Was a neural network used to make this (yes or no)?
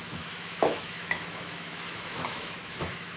yes